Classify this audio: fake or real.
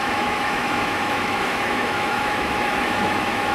fake